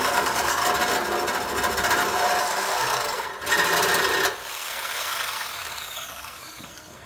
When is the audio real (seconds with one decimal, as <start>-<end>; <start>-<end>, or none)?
0.6-2.4; 3.3-4.5